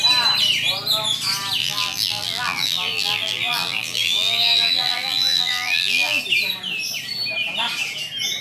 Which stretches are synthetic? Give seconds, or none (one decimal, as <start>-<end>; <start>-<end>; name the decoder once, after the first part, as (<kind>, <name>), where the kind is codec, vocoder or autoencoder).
1.6-6.2 (vocoder, BigVGAN v2)